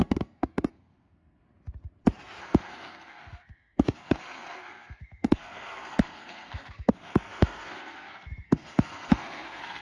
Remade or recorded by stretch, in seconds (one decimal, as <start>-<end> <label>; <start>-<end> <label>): 0.0-1.4 remade; 1.4-2.4 recorded; 2.4-9.8 remade